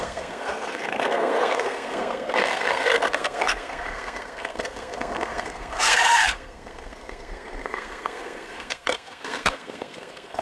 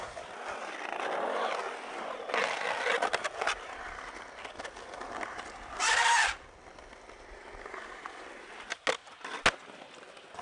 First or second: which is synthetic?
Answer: first